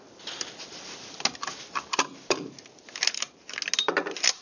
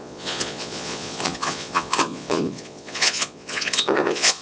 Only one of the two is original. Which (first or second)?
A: first